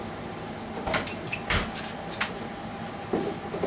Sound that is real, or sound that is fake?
fake